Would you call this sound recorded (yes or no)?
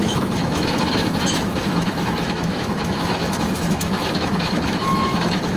no